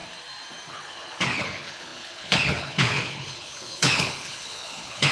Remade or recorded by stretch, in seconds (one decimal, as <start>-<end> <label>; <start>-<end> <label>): 0.0-0.7 recorded; 0.7-5.1 remade

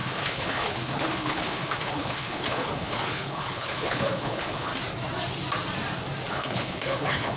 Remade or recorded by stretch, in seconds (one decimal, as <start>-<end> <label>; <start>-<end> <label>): 0.0-4.7 remade; 4.7-6.3 recorded; 6.3-7.4 remade

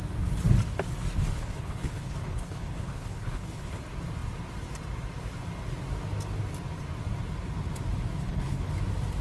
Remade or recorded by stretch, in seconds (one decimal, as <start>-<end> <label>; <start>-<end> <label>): 0.0-1.3 recorded; 1.3-3.8 remade; 3.8-8.2 recorded; 8.2-8.7 remade; 8.7-9.2 recorded